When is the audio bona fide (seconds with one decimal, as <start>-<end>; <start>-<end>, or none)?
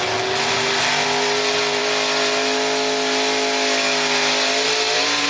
0.0-5.3